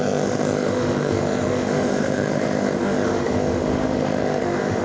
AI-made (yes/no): yes